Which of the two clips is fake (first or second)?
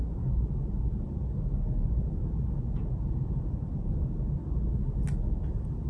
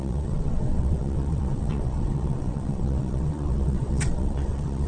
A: second